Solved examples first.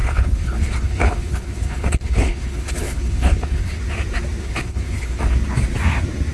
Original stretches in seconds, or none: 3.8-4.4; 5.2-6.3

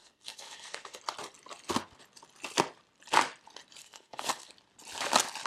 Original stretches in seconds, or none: 1.0-3.8; 4.5-5.5

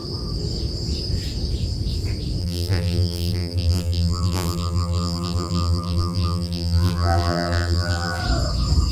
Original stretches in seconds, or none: 0.0-2.4; 8.2-8.9

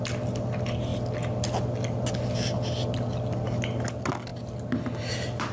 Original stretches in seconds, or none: 0.0-5.5

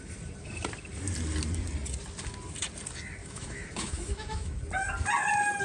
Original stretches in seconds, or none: 0.0-3.2; 4.6-5.6

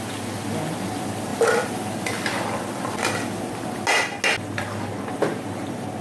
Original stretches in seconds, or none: 0.0-1.3; 2.6-6.0

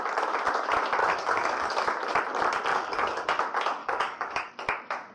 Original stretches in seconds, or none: 0.0-1.0; 1.7-2.7; 3.4-3.8; 4.5-5.1

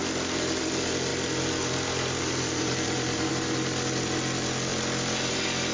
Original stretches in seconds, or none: 0.6-1.1; 3.3-5.7